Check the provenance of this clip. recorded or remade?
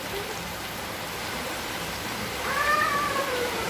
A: remade